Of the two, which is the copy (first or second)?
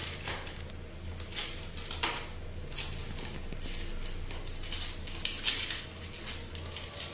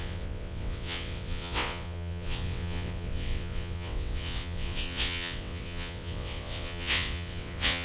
second